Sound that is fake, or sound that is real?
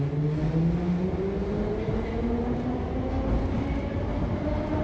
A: real